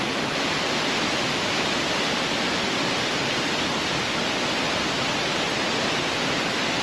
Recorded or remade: recorded